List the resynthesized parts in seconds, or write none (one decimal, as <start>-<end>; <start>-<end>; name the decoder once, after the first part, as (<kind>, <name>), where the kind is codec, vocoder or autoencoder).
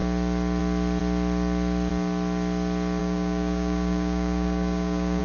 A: 3.0-5.2 (codec, DAC)